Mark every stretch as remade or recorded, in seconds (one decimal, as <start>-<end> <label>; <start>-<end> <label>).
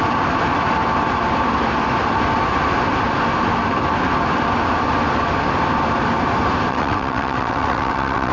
0.0-6.7 recorded; 6.7-8.3 remade